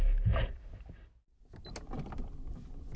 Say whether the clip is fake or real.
real